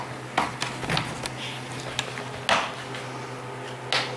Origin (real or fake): real